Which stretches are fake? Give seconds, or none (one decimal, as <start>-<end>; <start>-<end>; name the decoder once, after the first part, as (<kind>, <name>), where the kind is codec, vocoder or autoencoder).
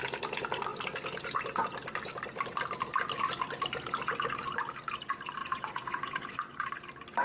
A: 5.4-6.7 (vocoder, Vocos)